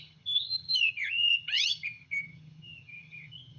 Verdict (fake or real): fake